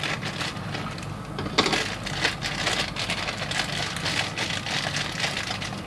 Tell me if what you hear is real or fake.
real